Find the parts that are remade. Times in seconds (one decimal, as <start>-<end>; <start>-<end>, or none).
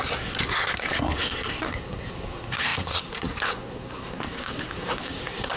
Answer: 0.0-5.6